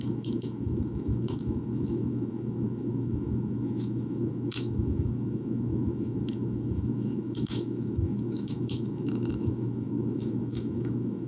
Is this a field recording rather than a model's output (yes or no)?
no